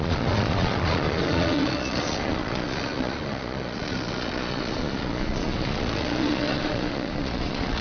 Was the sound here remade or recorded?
remade